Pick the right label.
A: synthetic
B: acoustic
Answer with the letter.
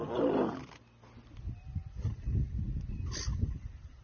B